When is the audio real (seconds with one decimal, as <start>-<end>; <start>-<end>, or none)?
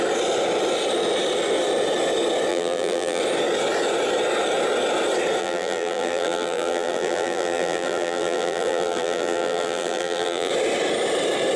0.0-2.5; 3.2-5.4; 10.5-11.6